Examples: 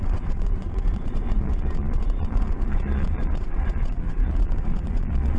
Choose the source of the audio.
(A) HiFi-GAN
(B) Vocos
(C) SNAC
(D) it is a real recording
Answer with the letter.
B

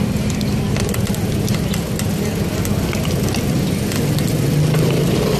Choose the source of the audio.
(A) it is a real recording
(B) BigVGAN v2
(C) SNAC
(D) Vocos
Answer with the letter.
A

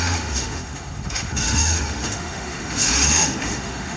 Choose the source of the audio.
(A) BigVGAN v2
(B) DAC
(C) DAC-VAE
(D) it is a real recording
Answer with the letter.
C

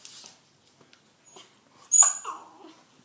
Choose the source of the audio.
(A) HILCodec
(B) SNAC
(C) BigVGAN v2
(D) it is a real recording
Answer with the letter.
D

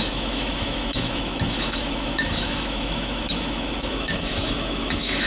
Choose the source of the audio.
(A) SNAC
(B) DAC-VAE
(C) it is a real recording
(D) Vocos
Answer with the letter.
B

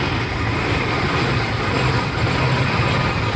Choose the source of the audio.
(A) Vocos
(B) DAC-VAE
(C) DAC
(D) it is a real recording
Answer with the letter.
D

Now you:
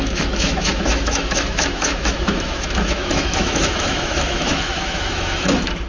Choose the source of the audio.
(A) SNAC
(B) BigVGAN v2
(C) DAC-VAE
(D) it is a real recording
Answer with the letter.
C